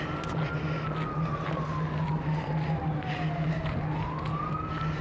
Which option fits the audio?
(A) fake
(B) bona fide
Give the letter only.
B